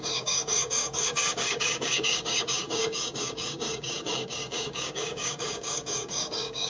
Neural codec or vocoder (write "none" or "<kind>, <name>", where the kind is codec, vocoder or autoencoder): codec, DAC